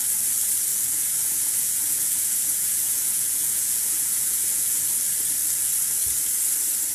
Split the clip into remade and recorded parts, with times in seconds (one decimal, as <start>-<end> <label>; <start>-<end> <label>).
0.0-0.7 recorded; 0.7-4.8 remade; 4.8-6.9 recorded

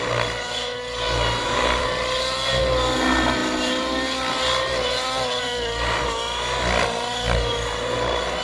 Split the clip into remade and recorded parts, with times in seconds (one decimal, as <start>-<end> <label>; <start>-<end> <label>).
0.0-8.4 recorded

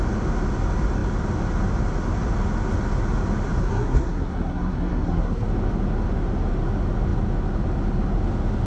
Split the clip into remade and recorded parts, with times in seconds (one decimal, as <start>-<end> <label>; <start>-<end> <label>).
0.0-3.6 recorded; 3.6-5.5 remade; 5.5-8.7 recorded

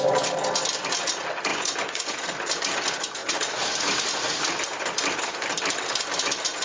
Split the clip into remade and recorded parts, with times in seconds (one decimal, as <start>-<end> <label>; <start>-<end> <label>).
0.0-1.5 recorded; 1.5-2.1 remade; 2.1-6.6 recorded